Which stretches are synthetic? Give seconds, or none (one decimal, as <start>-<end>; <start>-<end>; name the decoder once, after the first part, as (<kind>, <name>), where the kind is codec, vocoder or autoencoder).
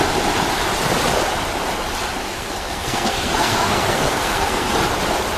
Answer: 2.2-4.7 (codec, SNAC)